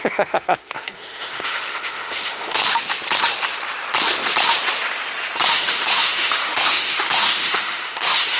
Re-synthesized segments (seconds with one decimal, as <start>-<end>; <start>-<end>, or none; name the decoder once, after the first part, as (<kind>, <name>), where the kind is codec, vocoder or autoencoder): 0.0-2.6 (autoencoder, DAC-VAE); 5.5-8.4